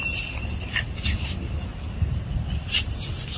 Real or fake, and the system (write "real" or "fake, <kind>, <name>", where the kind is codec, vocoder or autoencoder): real